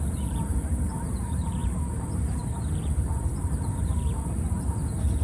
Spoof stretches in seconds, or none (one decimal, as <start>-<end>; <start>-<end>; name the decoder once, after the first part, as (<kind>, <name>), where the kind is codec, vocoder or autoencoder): 0.0-5.2 (vocoder, BigVGAN v2)